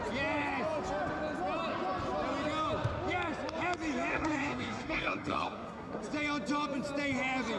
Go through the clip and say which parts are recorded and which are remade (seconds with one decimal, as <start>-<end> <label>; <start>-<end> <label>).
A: 0.0-4.1 recorded; 4.1-6.0 remade; 6.0-7.6 recorded